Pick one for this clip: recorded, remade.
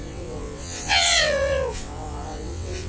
remade